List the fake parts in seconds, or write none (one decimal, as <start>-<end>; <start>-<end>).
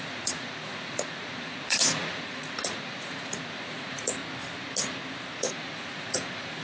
0.0-4.2; 5.4-6.6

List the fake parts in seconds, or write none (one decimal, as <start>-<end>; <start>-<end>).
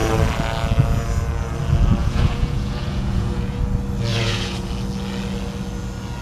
2.0-3.6; 4.1-4.7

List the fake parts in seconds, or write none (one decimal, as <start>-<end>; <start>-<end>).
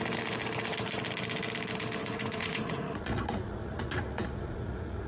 2.0-5.1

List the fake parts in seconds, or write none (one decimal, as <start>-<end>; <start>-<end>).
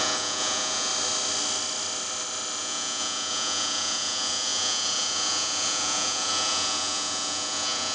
0.0-0.9; 2.6-7.9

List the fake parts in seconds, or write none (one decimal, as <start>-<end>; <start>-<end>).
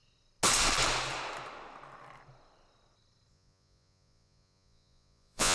3.3-5.5